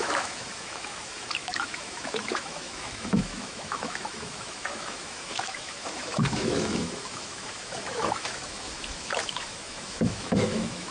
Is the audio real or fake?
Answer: fake